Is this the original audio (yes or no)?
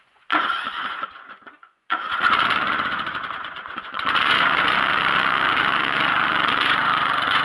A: no